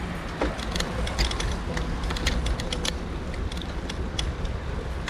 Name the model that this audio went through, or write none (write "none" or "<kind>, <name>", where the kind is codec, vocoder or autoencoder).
none